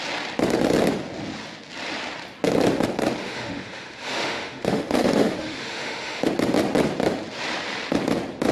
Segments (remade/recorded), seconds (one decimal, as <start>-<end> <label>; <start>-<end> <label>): 0.0-3.2 recorded; 3.2-6.3 remade; 6.3-8.5 recorded